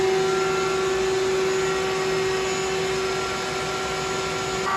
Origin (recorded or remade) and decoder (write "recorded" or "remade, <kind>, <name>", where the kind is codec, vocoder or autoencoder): recorded